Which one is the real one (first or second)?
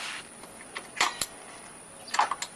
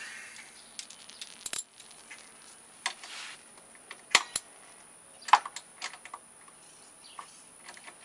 second